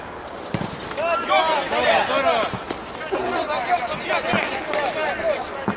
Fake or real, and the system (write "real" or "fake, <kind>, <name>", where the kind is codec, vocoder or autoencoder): real